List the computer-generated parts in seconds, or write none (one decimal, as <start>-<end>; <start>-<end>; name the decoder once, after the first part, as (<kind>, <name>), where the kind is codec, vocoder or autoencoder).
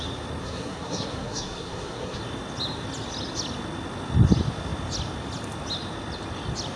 0.4-2.2 (codec, SNAC)